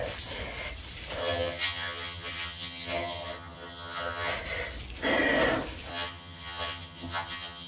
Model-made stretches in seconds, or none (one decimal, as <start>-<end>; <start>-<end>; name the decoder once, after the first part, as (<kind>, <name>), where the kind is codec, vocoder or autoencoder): 1.2-4.3 (vocoder, HiFi-GAN); 5.9-7.7